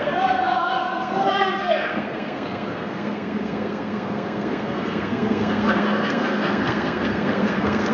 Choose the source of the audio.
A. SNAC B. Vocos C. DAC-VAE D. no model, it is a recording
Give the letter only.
A